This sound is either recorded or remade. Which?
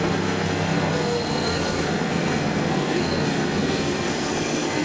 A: remade